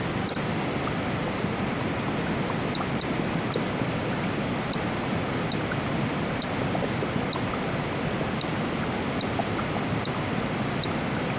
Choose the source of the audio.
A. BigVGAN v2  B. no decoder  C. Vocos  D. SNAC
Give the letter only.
B